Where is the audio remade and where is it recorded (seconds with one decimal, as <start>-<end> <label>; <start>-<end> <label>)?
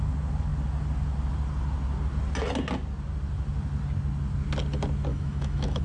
0.0-5.1 recorded; 5.1-5.8 remade